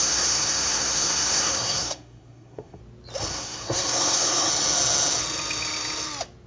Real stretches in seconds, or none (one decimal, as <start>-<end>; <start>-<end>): 2.8-3.3; 4.5-6.5